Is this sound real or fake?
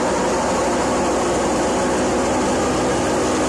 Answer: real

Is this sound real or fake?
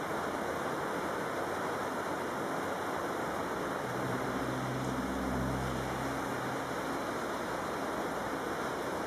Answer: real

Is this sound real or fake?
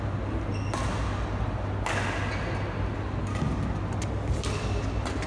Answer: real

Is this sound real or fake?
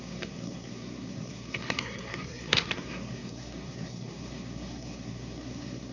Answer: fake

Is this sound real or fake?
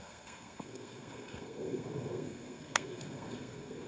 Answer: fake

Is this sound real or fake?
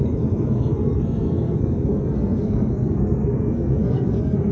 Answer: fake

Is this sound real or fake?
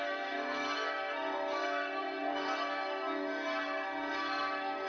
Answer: fake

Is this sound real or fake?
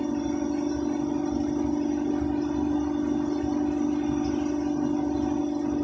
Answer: real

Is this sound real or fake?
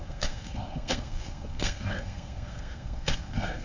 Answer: fake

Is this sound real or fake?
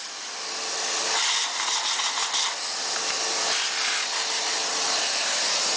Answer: real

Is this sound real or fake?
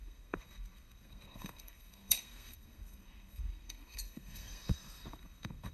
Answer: fake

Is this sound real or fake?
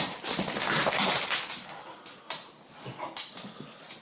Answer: real